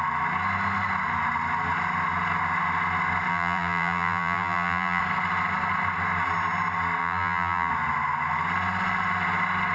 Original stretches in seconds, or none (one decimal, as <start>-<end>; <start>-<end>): 0.0-3.3; 5.0-7.0; 7.7-9.7